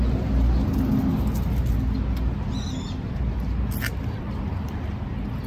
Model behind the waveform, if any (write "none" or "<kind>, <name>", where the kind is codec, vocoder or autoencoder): none